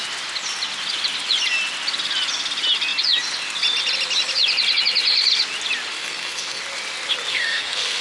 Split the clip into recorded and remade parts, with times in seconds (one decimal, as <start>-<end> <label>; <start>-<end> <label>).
0.0-5.9 recorded; 5.9-6.6 remade; 6.6-7.3 recorded; 7.3-8.0 remade